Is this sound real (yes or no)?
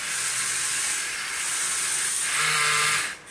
yes